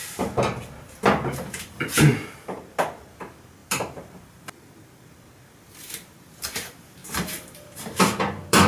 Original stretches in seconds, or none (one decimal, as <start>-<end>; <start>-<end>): 0.0-2.1; 2.7-3.6; 4.2-7.0